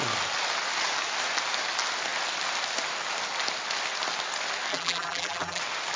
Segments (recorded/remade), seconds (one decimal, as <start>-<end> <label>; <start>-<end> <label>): 0.0-4.7 recorded; 4.7-5.6 remade; 5.6-6.0 recorded